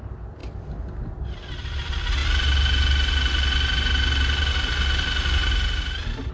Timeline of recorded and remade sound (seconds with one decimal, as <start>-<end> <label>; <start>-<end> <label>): 0.0-6.3 recorded